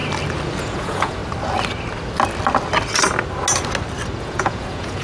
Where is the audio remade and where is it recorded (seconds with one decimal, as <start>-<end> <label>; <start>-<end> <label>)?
0.0-0.6 recorded; 0.6-1.2 remade; 1.2-4.2 recorded; 4.2-5.0 remade